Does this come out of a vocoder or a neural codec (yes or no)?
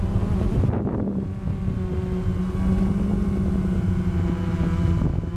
no